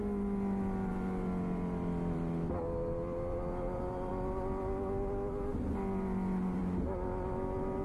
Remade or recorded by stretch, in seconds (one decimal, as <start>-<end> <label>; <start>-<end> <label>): 0.0-7.8 recorded